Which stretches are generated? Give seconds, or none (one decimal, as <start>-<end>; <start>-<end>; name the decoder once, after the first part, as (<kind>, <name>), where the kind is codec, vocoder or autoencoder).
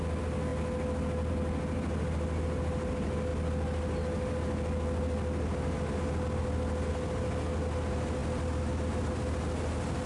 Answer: none